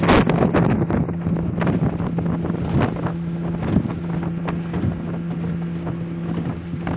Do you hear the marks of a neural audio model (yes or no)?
no